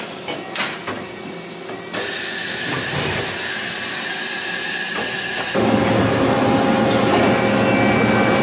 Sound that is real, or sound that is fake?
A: real